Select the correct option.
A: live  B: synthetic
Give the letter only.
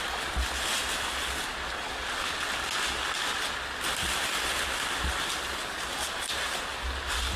A